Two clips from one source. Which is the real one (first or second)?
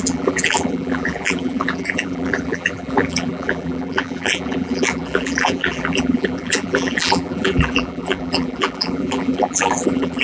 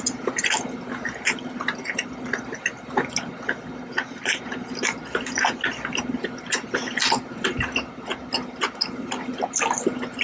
second